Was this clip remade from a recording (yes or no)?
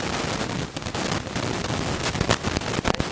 no